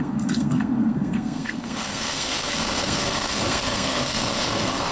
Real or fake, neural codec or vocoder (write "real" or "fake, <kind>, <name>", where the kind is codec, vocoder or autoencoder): fake, codec, SNAC